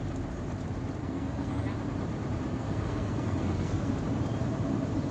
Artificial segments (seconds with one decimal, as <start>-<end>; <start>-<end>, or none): 1.0-1.6; 2.5-3.9